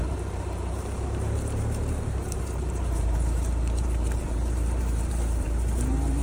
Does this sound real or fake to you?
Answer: fake